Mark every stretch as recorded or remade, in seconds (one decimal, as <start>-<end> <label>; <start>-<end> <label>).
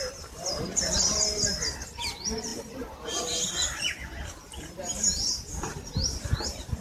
0.0-6.8 recorded